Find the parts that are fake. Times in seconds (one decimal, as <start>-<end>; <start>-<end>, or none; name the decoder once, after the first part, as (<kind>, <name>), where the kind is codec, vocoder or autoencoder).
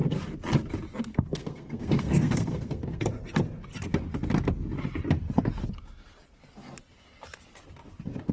1.1-3.1 (codec, SNAC)